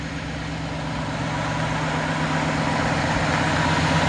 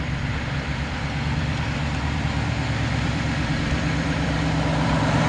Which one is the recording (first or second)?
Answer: first